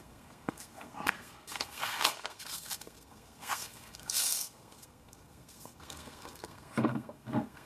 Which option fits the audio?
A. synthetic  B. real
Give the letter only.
A